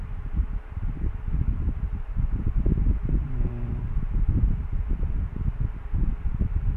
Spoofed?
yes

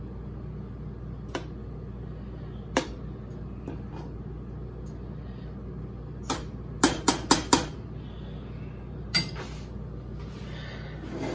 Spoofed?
no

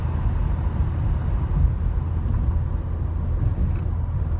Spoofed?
no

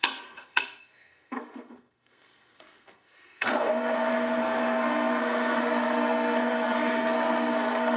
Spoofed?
yes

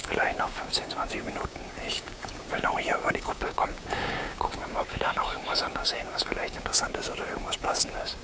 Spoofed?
yes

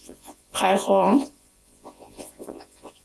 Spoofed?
yes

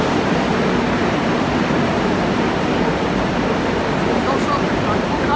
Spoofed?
yes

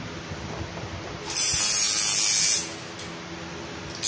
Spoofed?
no